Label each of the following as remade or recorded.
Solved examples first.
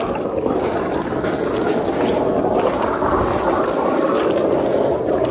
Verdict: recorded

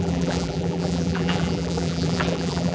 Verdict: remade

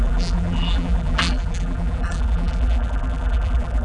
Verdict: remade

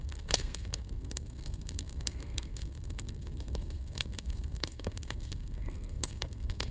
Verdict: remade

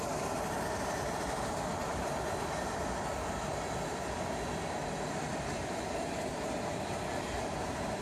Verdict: remade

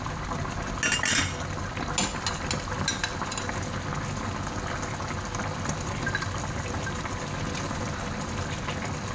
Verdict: recorded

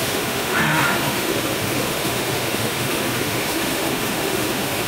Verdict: remade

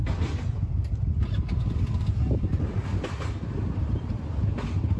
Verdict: recorded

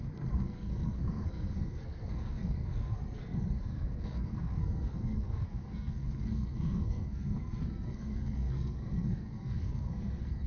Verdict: remade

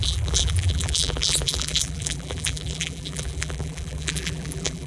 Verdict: remade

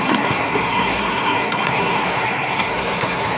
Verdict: remade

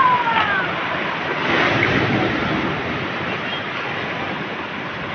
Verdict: recorded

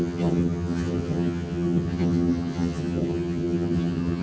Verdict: remade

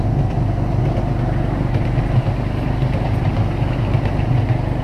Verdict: recorded